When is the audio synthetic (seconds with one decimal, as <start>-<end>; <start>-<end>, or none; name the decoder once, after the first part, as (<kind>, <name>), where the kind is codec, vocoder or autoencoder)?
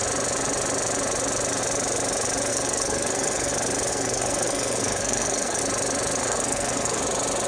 2.5-3.5 (codec, SNAC); 3.9-5.6; 6.2-7.0